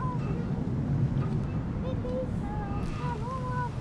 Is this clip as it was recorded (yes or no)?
yes